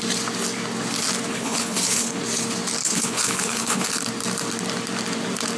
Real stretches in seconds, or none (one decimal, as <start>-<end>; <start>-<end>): 0.0-1.3; 2.2-2.8; 3.9-5.6